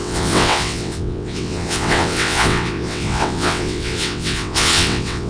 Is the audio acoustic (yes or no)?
no